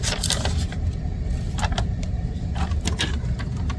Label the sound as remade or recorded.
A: recorded